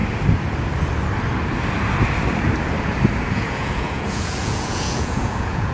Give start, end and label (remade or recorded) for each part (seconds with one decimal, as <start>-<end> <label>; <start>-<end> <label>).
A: 0.0-3.3 recorded; 3.3-5.7 remade